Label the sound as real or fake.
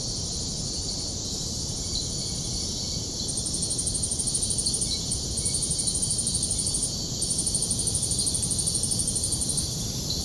fake